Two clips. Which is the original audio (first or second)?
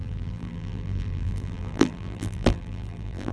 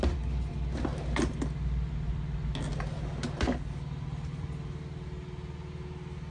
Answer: second